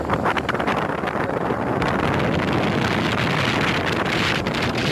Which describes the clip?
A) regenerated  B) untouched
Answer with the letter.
B